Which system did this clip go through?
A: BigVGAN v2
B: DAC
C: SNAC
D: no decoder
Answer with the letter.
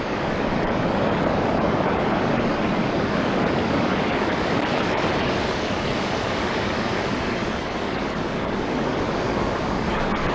B